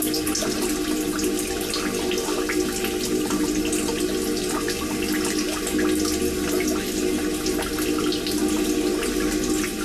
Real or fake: real